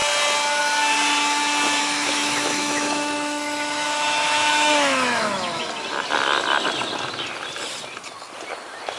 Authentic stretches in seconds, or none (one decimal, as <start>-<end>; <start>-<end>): 0.0-1.8; 5.6-9.0